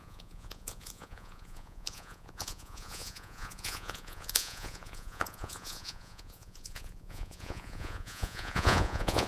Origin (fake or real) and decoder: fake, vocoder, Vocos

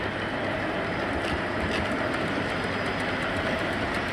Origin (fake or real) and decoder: real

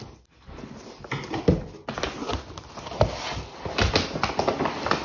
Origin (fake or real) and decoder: real